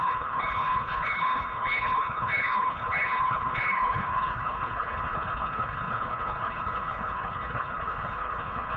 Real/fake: fake